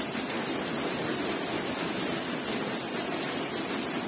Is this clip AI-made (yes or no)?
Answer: no